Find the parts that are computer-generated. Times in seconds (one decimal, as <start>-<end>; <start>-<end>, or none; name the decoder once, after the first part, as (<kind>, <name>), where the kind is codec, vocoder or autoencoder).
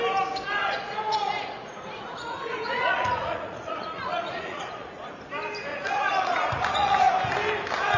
0.6-5.2 (vocoder, Vocos); 5.7-7.1